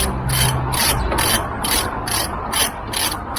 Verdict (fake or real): real